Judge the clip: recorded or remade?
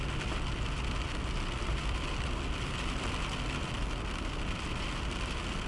recorded